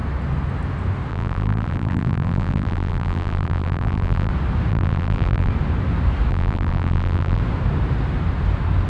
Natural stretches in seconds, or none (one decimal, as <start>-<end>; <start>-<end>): 0.0-1.1; 4.3-4.7; 5.5-6.3; 7.4-8.9

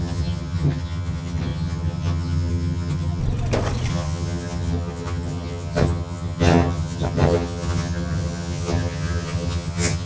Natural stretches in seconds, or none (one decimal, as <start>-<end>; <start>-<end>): 3.2-3.9

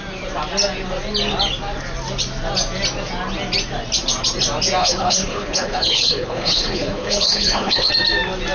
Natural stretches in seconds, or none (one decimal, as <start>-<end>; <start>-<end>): 0.0-4.8; 7.9-8.5

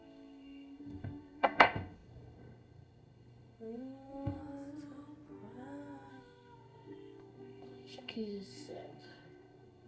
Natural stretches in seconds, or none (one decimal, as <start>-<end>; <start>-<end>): 4.4-6.1

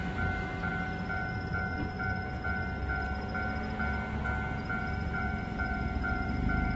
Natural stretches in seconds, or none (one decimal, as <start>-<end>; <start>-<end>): 0.7-4.8

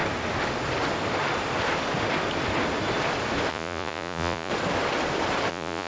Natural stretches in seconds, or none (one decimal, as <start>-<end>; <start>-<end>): 0.0-3.5; 4.5-5.5

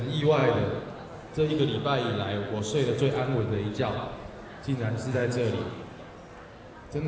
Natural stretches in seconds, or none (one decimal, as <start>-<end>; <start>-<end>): 0.0-7.1